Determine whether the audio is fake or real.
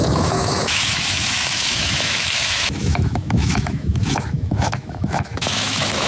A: fake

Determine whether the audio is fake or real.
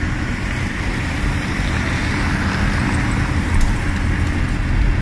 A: real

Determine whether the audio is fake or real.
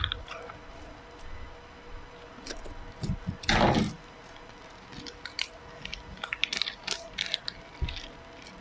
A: real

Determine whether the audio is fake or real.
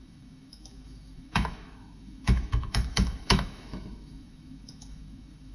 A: fake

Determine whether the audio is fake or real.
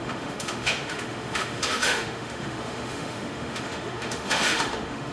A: fake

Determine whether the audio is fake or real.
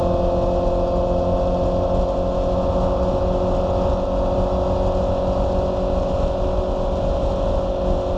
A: real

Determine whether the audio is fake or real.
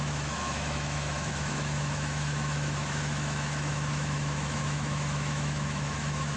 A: fake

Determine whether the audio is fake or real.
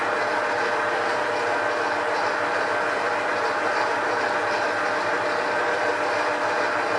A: real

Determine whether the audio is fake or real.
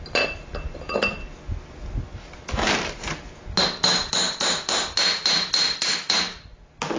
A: real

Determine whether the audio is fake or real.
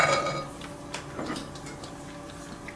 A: real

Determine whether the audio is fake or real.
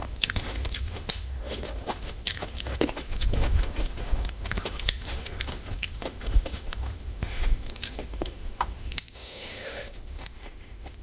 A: fake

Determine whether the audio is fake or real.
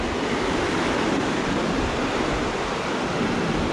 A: real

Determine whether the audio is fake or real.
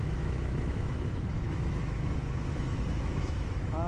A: fake